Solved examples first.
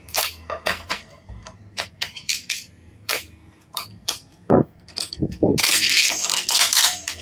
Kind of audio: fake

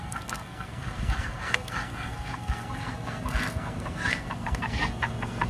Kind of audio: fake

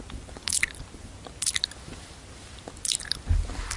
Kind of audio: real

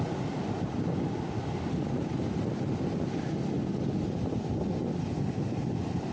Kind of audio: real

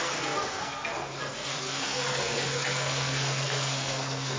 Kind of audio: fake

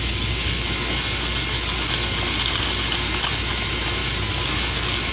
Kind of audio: real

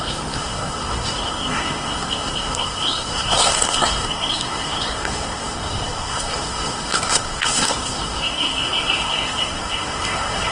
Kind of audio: fake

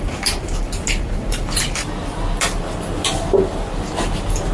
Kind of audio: real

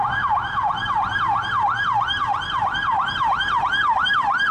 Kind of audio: real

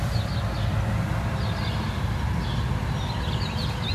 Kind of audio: real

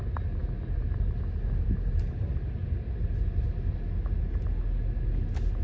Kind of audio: real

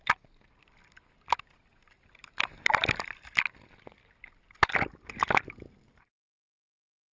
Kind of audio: real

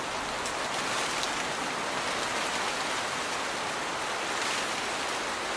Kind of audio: real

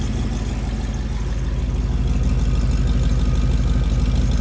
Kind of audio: real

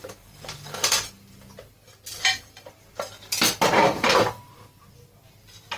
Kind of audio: real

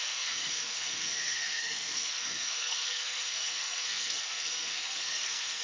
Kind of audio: fake